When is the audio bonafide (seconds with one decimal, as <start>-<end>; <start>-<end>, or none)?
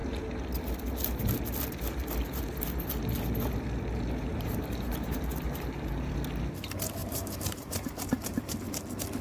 0.0-4.3; 6.1-7.0; 8.6-9.2